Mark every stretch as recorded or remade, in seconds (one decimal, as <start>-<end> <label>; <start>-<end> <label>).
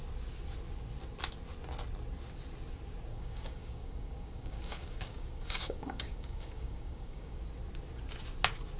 0.0-3.1 recorded; 3.1-7.4 remade; 7.4-8.8 recorded